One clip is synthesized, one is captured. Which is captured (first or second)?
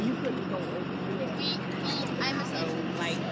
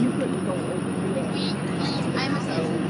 first